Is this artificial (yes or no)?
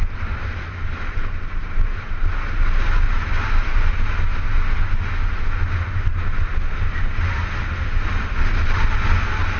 no